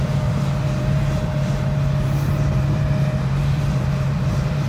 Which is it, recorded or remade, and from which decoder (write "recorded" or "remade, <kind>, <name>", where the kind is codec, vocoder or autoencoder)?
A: remade, vocoder, BigVGAN v2